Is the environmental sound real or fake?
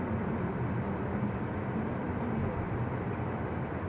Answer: real